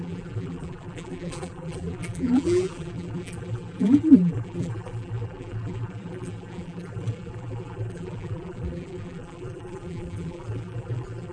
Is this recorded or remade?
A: remade